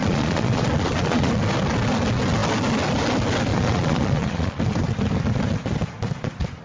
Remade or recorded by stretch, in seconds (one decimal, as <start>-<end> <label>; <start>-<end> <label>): 0.0-1.3 remade; 1.3-3.5 recorded; 3.5-4.6 remade; 4.6-6.6 recorded